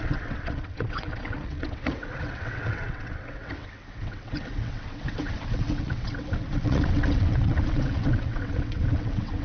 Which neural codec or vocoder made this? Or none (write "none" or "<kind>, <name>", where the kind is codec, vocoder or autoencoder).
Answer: vocoder, WaveNeXt